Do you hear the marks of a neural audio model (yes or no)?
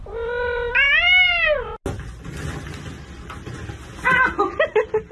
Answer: no